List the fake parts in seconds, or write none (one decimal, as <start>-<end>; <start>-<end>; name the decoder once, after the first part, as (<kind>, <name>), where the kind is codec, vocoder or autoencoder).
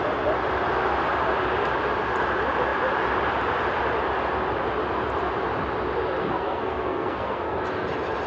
6.2-7.6 (codec, SNAC)